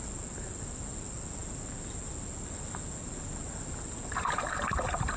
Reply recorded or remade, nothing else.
recorded